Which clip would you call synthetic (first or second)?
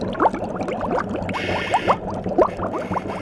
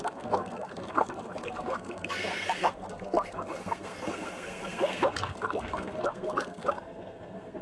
second